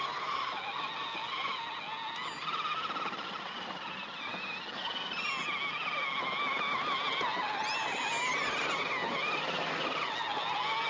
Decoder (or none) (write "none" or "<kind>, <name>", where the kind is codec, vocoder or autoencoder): none